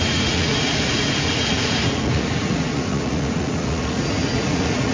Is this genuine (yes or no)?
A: no